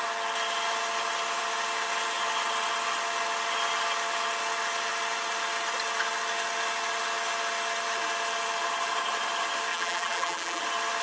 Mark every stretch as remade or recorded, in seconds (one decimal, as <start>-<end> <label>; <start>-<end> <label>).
0.0-9.7 recorded; 9.7-10.6 remade; 10.6-11.0 recorded